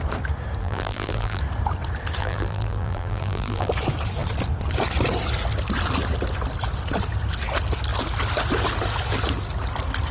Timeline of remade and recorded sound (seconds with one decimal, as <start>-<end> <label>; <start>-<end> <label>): 0.0-0.6 recorded; 0.6-1.4 remade; 1.4-2.2 recorded; 2.2-3.7 remade; 3.7-10.1 recorded